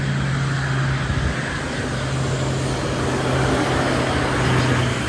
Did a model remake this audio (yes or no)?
no